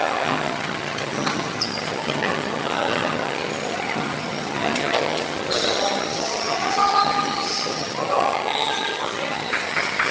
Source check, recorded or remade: remade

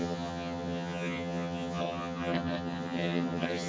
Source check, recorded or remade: remade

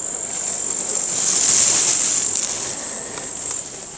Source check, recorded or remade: recorded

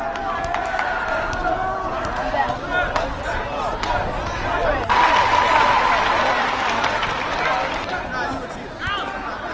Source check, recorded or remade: recorded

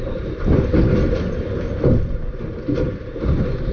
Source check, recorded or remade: recorded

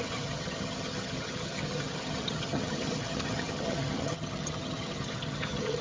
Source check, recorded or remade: remade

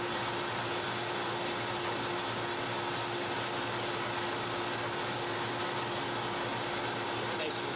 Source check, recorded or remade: recorded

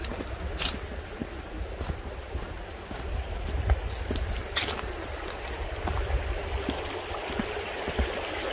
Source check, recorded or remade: recorded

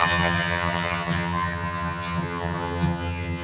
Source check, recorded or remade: remade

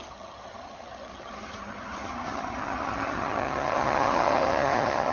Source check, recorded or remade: remade